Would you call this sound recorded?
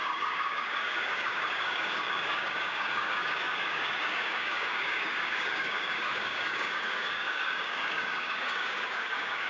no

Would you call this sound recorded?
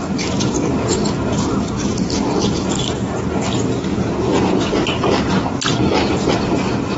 yes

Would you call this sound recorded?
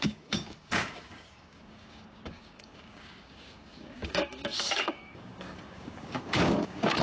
no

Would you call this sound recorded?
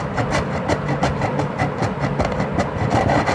yes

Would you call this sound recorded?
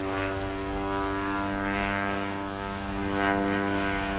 no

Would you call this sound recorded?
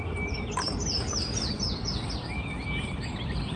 yes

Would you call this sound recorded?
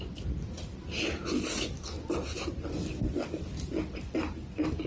yes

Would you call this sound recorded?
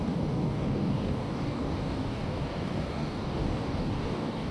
no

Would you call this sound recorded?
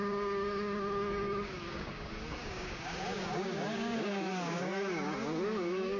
no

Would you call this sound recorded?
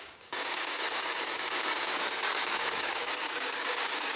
no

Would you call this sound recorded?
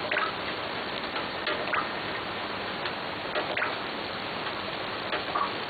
yes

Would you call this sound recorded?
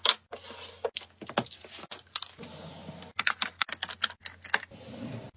yes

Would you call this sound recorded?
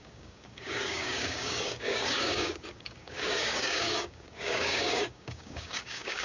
no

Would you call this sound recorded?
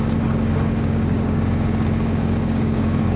no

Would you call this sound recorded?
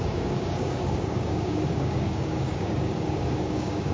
no